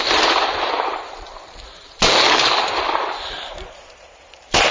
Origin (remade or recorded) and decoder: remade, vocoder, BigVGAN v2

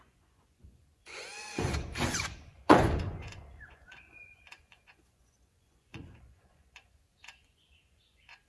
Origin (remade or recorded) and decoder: remade, vocoder, Vocos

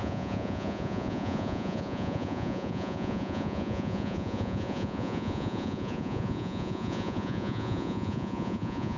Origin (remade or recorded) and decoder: remade, vocoder, Vocos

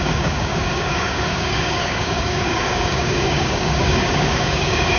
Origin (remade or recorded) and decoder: remade, codec, DAC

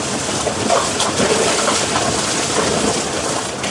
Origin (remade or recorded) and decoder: recorded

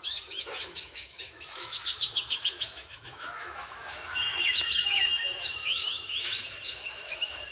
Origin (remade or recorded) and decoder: remade, autoencoder, DAC-VAE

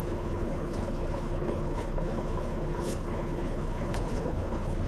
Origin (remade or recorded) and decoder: remade, codec, HILCodec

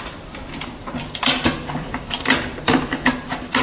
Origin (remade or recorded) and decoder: remade, vocoder, BigVGAN v2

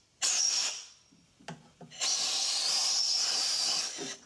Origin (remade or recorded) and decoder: recorded